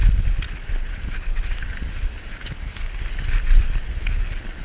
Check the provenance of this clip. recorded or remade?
recorded